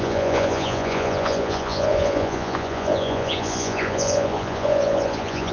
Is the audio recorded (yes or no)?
no